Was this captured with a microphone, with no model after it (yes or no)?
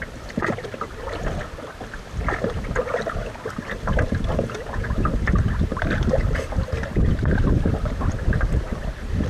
yes